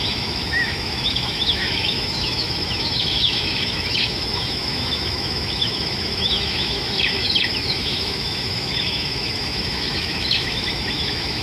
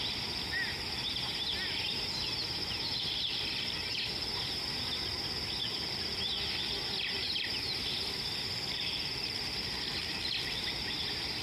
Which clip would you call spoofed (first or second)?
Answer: first